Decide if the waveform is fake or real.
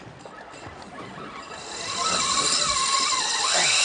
real